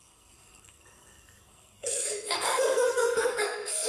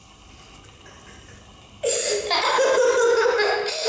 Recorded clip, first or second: second